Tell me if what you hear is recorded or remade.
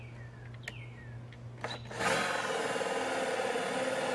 recorded